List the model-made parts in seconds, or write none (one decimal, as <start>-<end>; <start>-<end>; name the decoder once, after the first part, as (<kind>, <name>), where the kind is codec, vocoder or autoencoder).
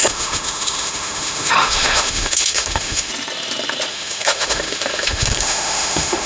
0.0-3.1 (autoencoder, DAC-VAE); 3.9-6.3